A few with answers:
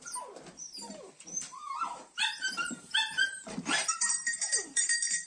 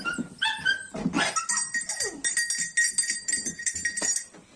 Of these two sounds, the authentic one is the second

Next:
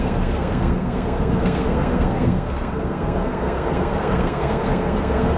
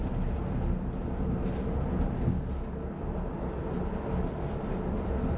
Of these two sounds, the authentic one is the second